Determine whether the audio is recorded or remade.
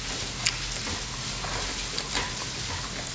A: recorded